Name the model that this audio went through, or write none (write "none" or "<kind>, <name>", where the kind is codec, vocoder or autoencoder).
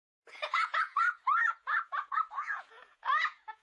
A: vocoder, Vocos